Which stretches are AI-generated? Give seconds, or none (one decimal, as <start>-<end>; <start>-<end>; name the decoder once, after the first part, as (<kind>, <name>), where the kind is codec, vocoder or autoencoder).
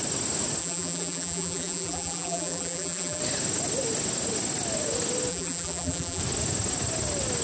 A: 0.6-3.2 (vocoder, BigVGAN v2); 5.3-6.2